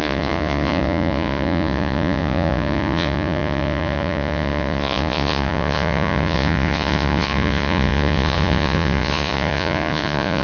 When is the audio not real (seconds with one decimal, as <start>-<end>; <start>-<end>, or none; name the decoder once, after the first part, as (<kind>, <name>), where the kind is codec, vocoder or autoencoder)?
0.0-10.4 (vocoder, Vocos)